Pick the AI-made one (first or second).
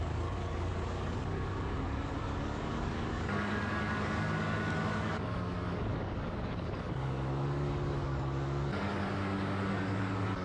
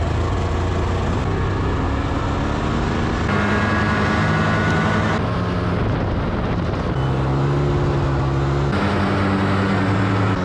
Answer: first